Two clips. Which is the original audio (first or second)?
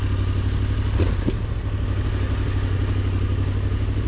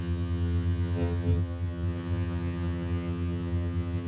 first